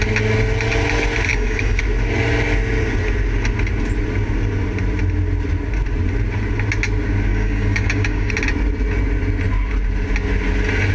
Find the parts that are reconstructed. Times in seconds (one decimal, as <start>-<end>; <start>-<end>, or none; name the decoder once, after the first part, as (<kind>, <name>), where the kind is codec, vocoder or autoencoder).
1.3-1.8 (codec, DAC); 7.3-8.3